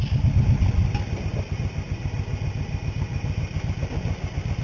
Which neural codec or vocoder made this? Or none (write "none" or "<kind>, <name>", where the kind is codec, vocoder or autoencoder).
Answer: none